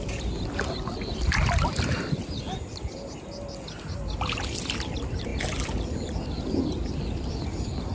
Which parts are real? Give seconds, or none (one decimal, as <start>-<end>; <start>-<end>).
0.0-7.9